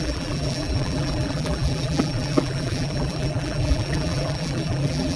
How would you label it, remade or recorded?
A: remade